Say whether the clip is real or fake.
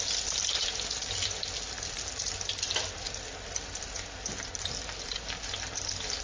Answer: real